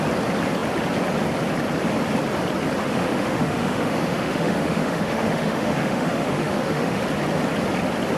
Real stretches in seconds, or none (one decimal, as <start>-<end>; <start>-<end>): 0.0-2.8; 7.0-8.2

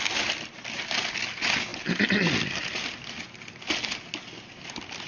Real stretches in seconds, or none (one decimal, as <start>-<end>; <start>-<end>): 0.0-5.1

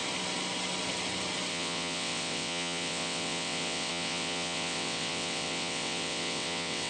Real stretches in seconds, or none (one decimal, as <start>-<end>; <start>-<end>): 0.0-1.5

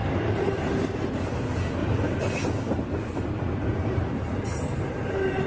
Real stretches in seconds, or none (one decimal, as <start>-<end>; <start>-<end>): 0.7-1.8; 5.1-5.5

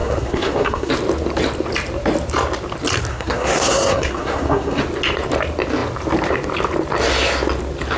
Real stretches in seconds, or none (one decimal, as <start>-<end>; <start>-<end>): 0.9-3.1; 4.8-8.0

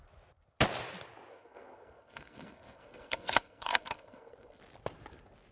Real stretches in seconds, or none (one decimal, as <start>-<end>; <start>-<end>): 0.0-1.3; 4.6-5.5